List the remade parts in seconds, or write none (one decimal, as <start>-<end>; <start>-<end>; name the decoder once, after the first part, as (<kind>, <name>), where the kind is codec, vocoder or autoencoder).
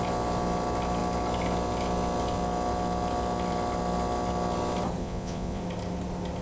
5.0-5.6 (vocoder, Vocos)